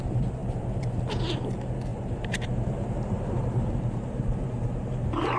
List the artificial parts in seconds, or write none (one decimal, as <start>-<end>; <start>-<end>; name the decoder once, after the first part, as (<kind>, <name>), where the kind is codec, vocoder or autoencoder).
1.9-5.4 (vocoder, BigVGAN v2)